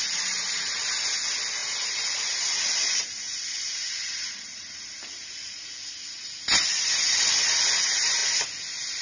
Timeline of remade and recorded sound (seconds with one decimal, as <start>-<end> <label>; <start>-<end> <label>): 0.0-1.6 recorded; 1.6-5.6 remade; 5.6-9.0 recorded